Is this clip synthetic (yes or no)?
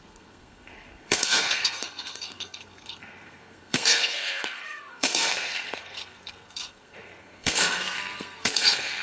yes